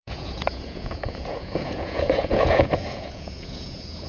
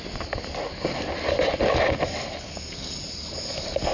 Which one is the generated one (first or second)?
first